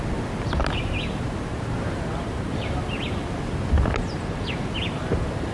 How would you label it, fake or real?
real